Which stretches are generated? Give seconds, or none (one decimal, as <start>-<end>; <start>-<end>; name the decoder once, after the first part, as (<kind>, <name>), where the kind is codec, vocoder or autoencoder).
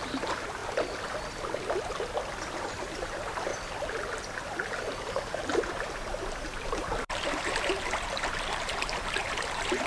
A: 0.0-0.6 (vocoder, BigVGAN v2); 2.6-3.5; 5.0-9.9